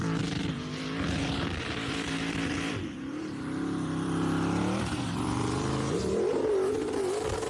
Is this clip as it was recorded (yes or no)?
no